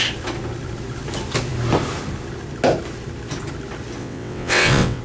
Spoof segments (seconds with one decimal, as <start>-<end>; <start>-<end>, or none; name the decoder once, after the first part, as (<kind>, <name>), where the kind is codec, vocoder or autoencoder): 4.0-5.0 (vocoder, WaveNeXt)